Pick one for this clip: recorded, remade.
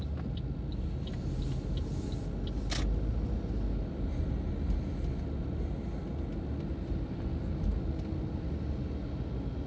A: recorded